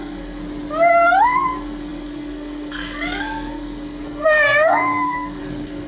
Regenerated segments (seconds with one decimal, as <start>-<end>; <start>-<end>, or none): 0.0-0.4; 1.2-5.9